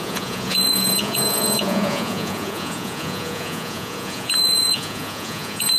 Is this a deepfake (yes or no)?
yes